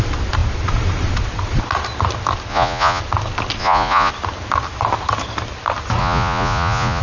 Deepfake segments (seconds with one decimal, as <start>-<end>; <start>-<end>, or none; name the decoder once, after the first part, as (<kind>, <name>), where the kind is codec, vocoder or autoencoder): 2.5-3.0 (vocoder, Vocos); 3.6-4.1; 6.0-7.0